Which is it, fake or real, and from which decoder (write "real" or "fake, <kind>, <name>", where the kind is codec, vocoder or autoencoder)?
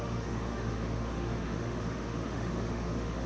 fake, autoencoder, DAC-VAE